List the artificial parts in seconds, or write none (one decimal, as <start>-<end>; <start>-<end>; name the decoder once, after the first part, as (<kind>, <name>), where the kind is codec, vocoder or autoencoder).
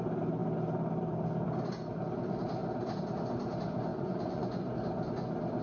3.9-4.7 (vocoder, Vocos)